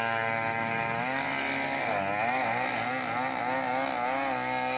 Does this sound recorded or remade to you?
recorded